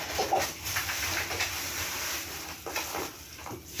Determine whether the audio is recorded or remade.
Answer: recorded